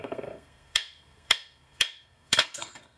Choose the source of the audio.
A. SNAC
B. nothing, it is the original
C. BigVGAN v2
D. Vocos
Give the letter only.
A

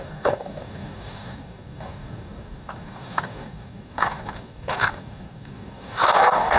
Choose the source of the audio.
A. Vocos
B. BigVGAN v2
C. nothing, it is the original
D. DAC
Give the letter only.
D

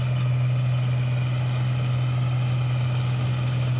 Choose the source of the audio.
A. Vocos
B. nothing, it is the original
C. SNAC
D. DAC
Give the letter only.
B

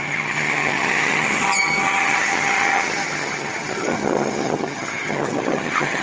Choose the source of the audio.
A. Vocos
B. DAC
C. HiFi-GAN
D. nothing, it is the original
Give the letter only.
C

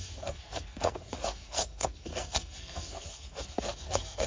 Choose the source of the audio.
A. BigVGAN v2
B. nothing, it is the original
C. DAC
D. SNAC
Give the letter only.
D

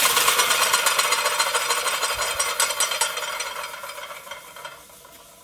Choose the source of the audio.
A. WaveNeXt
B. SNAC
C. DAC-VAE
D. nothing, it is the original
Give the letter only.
D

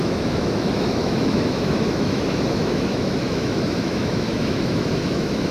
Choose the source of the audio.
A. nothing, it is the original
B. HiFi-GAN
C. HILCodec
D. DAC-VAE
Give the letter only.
D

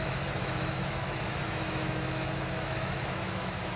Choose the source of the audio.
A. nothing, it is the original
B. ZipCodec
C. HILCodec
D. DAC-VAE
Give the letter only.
D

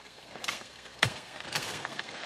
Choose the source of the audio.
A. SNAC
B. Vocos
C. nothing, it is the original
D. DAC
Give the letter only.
A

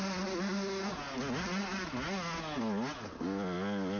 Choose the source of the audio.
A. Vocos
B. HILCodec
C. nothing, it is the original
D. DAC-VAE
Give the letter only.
C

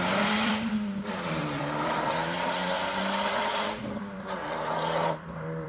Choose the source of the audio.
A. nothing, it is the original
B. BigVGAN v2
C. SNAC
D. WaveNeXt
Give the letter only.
B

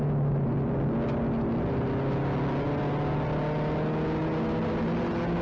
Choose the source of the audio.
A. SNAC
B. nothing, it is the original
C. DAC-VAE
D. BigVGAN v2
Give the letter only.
B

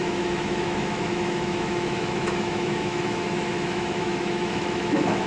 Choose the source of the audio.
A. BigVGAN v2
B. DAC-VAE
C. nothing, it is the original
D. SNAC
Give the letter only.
B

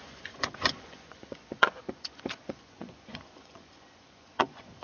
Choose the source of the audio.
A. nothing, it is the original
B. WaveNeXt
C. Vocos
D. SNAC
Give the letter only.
C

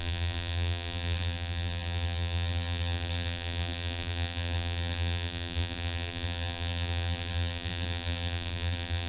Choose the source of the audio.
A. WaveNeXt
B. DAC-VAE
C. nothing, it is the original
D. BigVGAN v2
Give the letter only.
D